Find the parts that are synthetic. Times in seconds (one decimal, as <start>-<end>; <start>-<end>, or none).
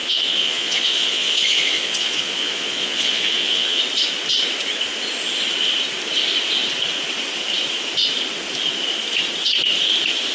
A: 0.0-3.8